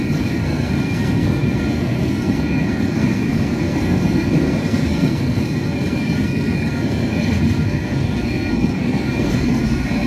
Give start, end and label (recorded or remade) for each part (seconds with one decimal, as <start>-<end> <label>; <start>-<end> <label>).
0.0-10.1 remade